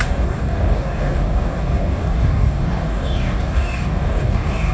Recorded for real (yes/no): no